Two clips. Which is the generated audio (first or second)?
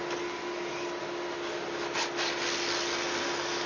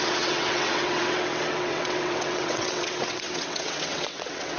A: second